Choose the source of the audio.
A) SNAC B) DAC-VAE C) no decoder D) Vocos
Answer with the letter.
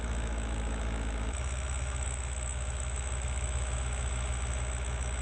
B